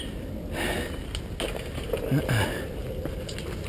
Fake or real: real